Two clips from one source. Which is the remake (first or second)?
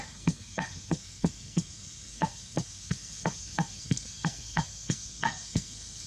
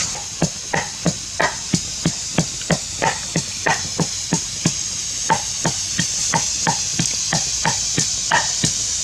first